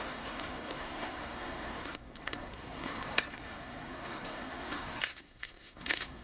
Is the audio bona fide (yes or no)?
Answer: no